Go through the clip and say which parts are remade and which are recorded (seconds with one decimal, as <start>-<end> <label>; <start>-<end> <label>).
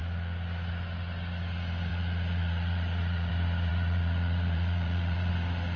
0.0-1.9 recorded; 1.9-3.3 remade; 3.3-3.7 recorded; 3.7-5.3 remade; 5.3-5.8 recorded